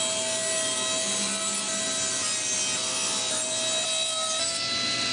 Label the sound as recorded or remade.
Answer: recorded